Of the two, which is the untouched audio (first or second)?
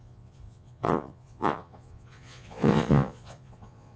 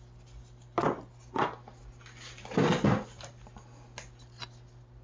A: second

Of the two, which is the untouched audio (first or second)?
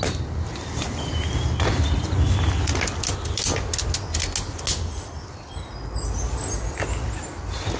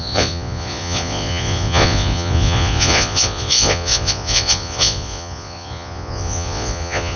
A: first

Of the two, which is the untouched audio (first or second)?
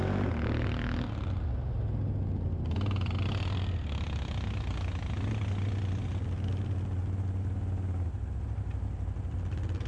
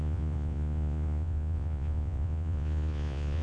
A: first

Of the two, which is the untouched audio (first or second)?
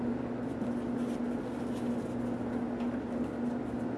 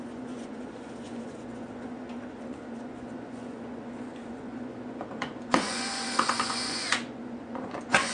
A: first